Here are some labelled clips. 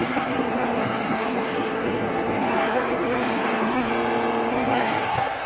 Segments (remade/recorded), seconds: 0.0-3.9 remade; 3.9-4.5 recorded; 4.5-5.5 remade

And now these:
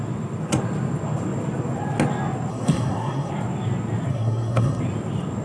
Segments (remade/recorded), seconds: 0.0-2.5 recorded; 2.5-3.3 remade; 3.3-4.1 recorded; 4.1-4.8 remade; 4.8-5.4 recorded

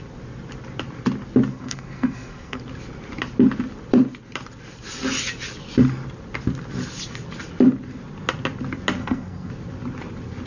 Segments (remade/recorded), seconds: 0.0-1.5 recorded; 1.5-2.6 remade; 2.6-9.0 recorded; 9.0-9.5 remade; 9.5-10.5 recorded

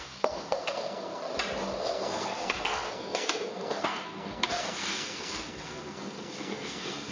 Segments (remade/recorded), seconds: 0.0-1.2 remade; 1.2-1.8 recorded; 1.8-7.1 remade

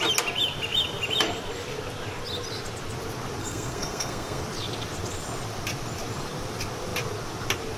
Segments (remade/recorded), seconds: 0.0-3.4 recorded; 3.4-4.4 remade; 4.4-7.8 recorded

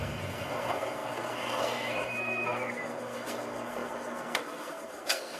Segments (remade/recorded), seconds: 0.0-5.4 remade

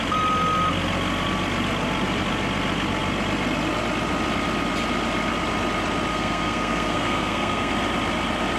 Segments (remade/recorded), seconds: 0.0-6.1 recorded; 6.1-7.7 remade; 7.7-8.6 recorded

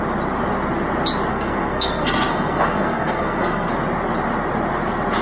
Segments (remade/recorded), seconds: 0.0-1.3 recorded; 1.3-3.7 remade; 3.7-5.2 recorded